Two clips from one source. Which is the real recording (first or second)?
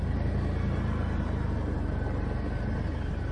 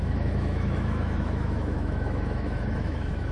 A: first